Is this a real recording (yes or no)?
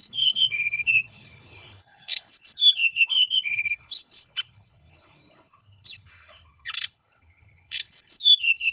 no